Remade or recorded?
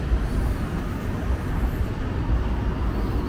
recorded